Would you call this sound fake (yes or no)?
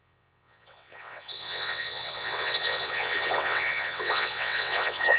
yes